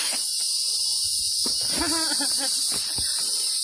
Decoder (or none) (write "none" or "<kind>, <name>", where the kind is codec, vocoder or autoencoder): none